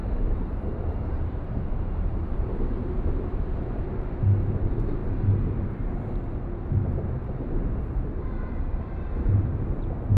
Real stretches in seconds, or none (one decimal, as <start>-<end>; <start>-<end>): 3.8-10.2